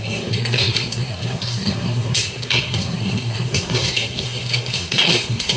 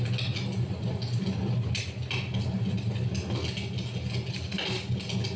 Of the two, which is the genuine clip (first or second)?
second